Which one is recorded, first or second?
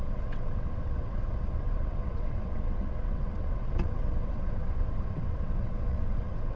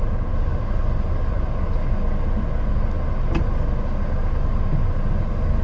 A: second